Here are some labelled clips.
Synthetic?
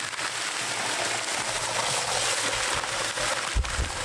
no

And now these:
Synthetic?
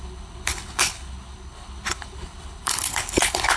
yes